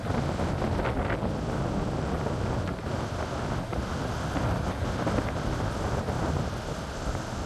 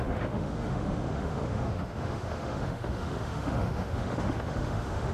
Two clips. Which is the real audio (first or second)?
first